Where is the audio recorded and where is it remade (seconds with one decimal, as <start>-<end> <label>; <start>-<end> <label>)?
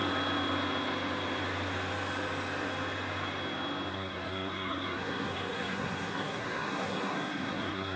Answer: 0.0-3.9 recorded; 3.9-8.0 remade